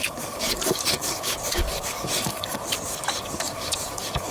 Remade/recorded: remade